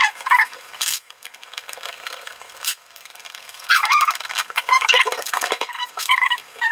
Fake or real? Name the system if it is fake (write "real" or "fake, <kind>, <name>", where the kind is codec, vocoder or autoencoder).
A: fake, codec, SNAC